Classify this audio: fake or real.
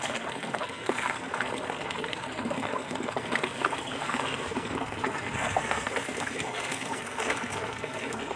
fake